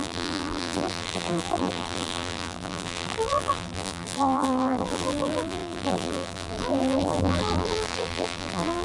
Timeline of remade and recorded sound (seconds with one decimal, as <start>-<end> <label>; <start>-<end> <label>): 0.0-8.8 remade